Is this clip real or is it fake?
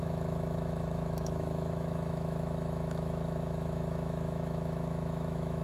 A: fake